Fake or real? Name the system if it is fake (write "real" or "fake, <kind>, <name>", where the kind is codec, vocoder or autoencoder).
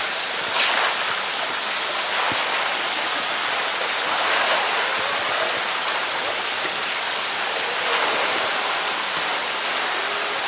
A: real